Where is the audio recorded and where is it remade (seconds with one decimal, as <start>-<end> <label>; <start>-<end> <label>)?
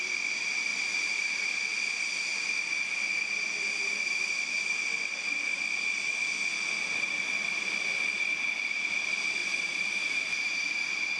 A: 0.0-0.7 recorded; 0.7-1.5 remade; 1.5-9.4 recorded; 9.4-11.2 remade